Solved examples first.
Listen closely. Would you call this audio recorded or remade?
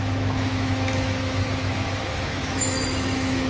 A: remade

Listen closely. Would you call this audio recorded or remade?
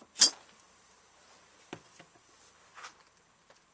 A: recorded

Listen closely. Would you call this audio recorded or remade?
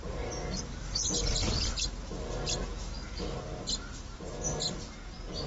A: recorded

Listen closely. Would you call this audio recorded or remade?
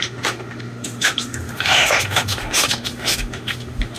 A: remade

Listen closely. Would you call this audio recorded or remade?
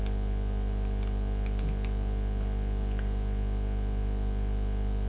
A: recorded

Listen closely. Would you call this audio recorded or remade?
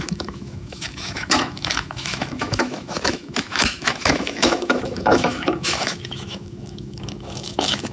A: remade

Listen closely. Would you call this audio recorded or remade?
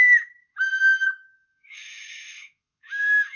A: remade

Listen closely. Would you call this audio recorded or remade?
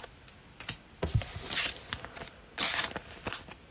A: recorded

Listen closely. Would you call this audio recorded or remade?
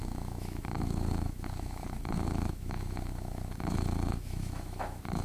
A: remade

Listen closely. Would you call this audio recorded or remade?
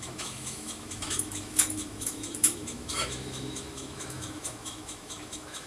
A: remade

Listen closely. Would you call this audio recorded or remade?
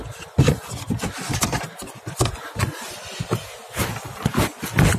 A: recorded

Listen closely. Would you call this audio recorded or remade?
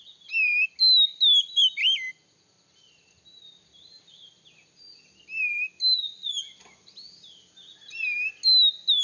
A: recorded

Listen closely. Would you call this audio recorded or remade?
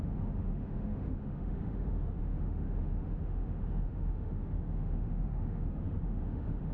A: remade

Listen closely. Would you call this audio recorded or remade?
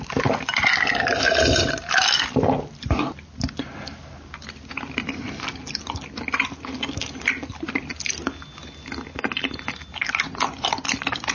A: recorded